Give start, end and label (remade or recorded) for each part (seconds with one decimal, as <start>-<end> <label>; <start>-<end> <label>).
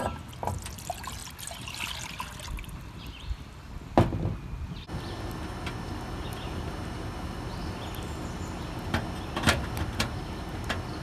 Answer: 0.0-11.0 recorded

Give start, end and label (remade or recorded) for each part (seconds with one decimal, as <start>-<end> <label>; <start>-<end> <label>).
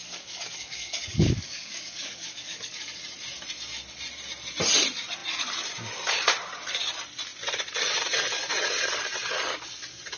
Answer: 0.0-3.0 remade; 3.0-10.2 recorded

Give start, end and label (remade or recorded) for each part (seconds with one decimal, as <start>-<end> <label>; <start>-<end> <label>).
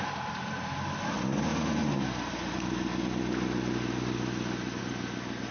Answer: 0.0-5.5 recorded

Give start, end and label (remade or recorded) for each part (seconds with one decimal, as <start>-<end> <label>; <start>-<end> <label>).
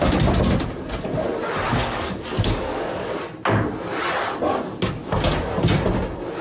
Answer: 0.0-1.7 recorded; 1.7-3.2 remade; 3.2-6.4 recorded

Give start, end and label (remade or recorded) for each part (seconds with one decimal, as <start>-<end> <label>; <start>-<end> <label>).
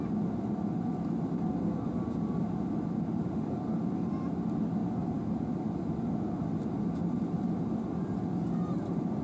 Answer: 0.0-9.2 recorded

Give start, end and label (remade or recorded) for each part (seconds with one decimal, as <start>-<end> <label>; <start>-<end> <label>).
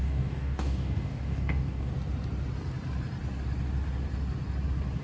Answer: 0.0-1.9 remade; 1.9-5.0 recorded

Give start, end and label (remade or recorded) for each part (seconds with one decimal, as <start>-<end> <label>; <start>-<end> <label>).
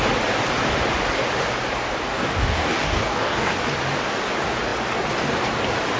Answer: 0.0-2.1 recorded; 2.1-3.5 remade; 3.5-6.0 recorded